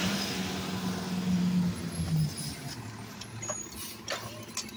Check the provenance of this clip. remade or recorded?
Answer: recorded